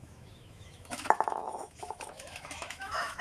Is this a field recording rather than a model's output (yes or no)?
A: no